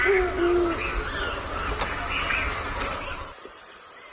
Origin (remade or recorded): recorded